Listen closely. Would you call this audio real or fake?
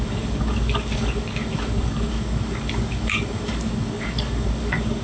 fake